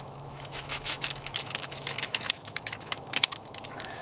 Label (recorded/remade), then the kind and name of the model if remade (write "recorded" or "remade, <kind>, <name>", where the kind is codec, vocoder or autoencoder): remade, autoencoder, DAC-VAE